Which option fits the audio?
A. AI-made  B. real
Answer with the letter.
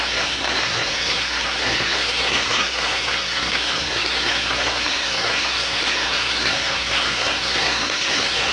A